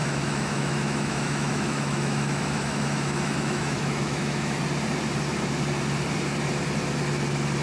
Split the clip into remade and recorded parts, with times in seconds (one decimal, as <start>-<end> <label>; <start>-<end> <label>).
0.0-4.6 remade; 4.6-7.6 recorded